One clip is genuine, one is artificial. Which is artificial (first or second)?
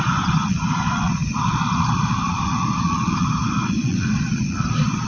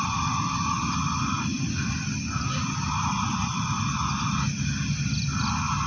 first